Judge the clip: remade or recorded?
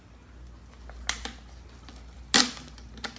recorded